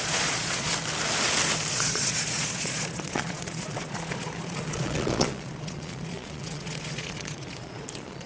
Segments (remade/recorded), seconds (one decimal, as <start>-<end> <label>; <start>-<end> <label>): 0.0-0.7 remade; 0.7-1.7 recorded; 1.7-8.3 remade